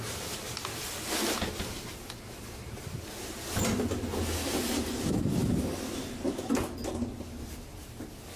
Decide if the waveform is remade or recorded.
recorded